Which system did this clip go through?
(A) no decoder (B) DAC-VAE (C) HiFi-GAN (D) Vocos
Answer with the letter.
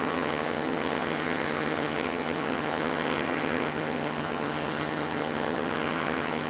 C